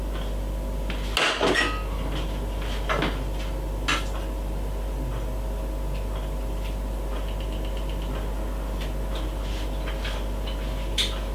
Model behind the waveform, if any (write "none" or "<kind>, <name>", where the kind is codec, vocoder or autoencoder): none